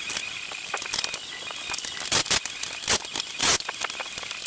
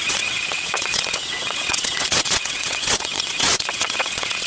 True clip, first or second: first